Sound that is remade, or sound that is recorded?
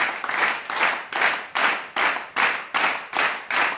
recorded